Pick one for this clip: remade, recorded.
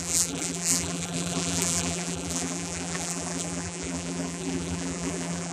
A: remade